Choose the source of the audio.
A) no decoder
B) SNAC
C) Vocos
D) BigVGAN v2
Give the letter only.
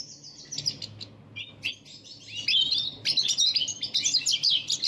A